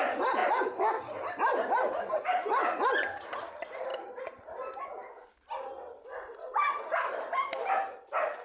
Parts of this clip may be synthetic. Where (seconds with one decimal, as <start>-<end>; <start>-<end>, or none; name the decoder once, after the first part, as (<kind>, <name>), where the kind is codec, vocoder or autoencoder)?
none